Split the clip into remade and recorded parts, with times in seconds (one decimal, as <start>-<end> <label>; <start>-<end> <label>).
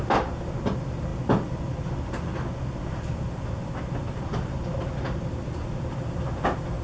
0.0-6.8 recorded